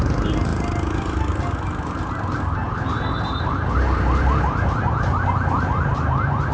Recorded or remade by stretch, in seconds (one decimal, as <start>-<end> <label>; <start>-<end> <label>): 0.0-6.5 recorded